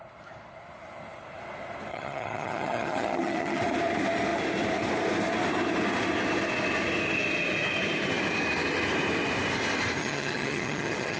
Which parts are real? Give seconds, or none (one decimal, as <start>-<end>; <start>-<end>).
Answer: 0.0-1.9; 3.6-10.0